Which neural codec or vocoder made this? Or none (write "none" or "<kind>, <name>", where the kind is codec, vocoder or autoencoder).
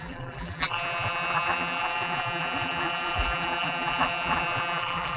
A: vocoder, BigVGAN v2